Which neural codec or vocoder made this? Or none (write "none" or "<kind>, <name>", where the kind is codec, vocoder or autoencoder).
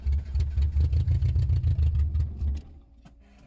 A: none